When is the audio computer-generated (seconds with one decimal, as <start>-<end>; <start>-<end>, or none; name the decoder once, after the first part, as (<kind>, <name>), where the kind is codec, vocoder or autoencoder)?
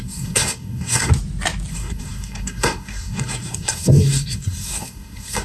0.0-1.1 (codec, SNAC); 1.7-5.4